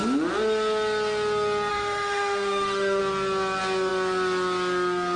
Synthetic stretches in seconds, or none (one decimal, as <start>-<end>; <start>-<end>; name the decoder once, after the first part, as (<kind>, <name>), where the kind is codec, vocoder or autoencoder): 1.7-3.0 (autoencoder, DAC-VAE)